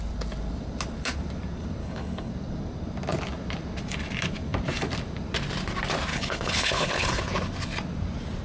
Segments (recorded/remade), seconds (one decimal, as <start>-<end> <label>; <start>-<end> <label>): 0.0-1.8 recorded; 1.8-2.3 remade; 2.3-6.1 recorded; 6.1-7.2 remade; 7.2-8.4 recorded